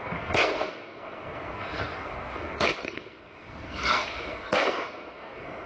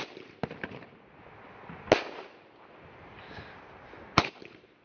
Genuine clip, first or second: second